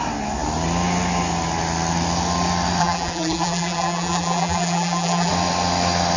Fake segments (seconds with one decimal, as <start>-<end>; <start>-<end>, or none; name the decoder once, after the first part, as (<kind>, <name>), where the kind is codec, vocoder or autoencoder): 2.8-5.3 (vocoder, BigVGAN v2)